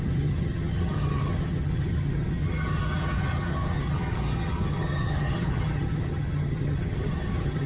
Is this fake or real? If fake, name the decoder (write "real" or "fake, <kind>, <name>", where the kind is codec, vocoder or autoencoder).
fake, vocoder, HiFi-GAN